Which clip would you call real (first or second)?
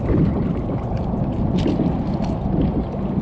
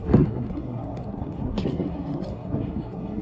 first